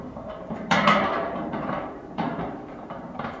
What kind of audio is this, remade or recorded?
remade